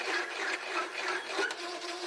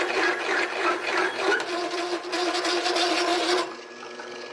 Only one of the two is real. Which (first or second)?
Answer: second